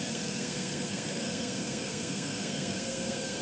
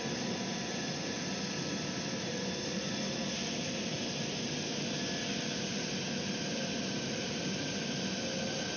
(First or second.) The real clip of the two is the second